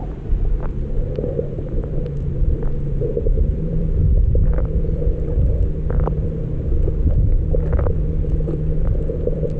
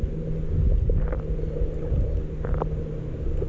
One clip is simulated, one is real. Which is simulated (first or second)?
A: first